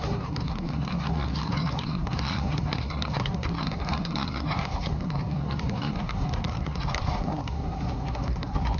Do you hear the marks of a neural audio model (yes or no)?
yes